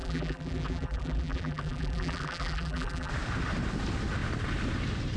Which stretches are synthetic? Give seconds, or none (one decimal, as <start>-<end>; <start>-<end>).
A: 0.0-3.1